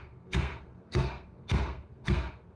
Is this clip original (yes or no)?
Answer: no